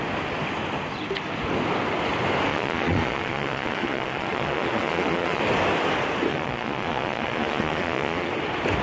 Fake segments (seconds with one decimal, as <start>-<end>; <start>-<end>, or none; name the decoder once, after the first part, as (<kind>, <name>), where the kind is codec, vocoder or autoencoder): 2.5-5.4 (vocoder, Vocos); 6.3-8.3